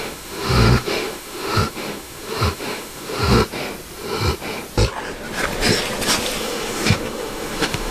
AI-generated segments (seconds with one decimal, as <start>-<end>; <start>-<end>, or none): 0.0-3.4; 6.4-7.9